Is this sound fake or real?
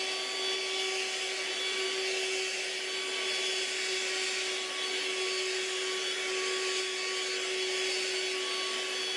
real